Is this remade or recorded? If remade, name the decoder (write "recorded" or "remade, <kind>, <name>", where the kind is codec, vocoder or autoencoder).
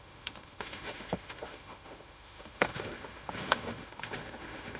remade, autoencoder, DAC-VAE